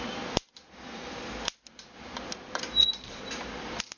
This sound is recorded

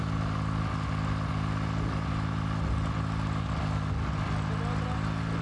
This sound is recorded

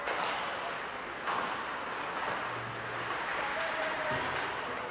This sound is recorded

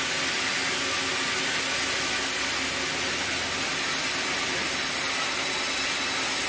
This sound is recorded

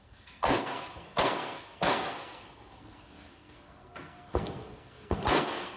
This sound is remade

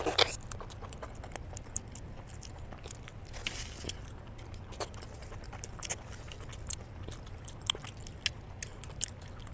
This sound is recorded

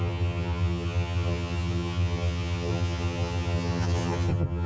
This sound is remade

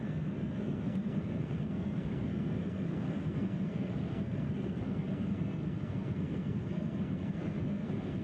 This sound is remade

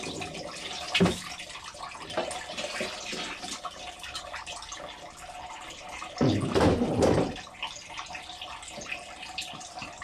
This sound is recorded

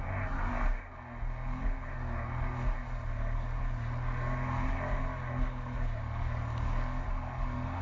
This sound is recorded